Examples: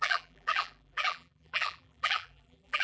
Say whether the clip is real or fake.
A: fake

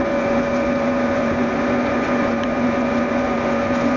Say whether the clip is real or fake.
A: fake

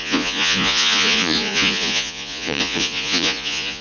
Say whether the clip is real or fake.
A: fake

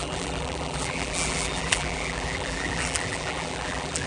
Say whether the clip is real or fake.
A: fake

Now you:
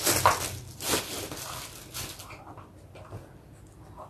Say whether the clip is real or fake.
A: real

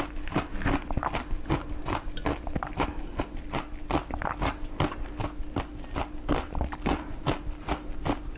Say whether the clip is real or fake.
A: real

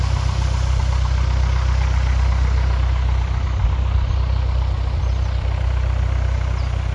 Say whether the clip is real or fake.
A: real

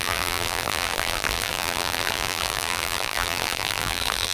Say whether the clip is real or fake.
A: fake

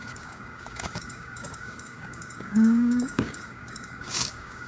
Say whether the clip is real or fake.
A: fake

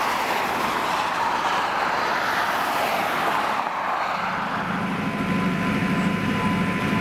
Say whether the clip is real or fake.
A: real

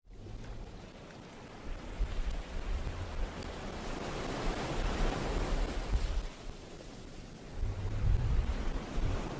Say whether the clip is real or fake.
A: real